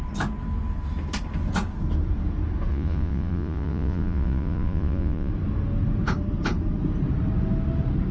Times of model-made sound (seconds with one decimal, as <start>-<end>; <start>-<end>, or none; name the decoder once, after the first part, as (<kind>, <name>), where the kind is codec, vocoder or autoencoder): 2.7-5.3 (vocoder, Vocos)

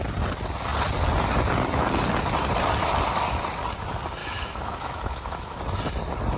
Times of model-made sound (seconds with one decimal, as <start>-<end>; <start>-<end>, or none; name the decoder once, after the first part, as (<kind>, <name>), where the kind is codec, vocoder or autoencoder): 4.2-5.6 (autoencoder, DAC-VAE)